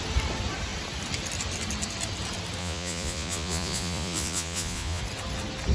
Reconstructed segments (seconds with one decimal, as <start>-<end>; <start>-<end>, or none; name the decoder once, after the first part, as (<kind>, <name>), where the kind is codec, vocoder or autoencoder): 2.6-5.0 (vocoder, Vocos)